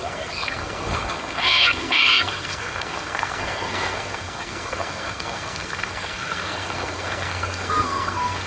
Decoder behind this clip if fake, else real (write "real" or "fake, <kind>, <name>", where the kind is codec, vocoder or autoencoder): fake, codec, SNAC